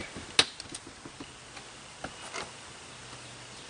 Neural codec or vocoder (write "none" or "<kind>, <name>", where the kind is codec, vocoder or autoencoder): none